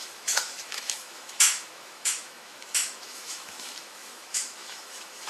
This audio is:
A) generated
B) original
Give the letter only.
A